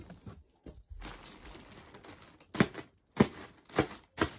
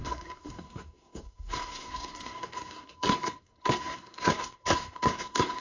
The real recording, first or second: first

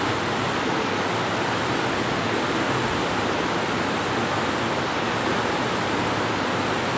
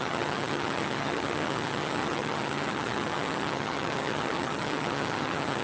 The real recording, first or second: first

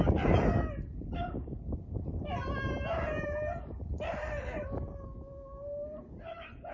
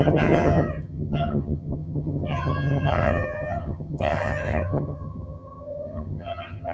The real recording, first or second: first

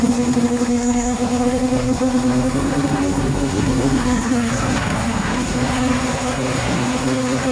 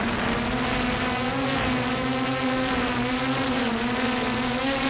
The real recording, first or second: second